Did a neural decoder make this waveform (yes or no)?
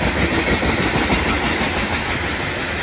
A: no